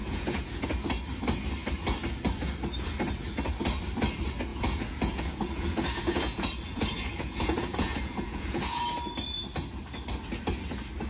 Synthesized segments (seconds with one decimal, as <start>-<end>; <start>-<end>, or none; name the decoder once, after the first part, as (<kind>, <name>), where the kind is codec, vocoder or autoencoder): 0.0-0.6 (vocoder, Vocos); 4.5-8.8